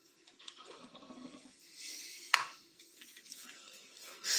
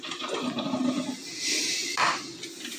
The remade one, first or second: first